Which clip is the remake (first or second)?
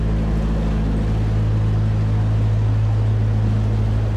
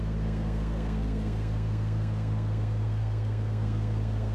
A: second